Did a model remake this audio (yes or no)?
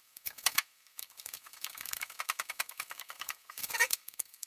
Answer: yes